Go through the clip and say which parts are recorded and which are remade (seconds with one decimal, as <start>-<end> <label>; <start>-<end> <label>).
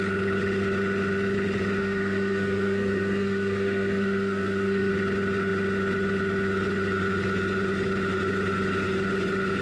0.0-1.8 recorded; 1.8-4.9 remade; 4.9-9.6 recorded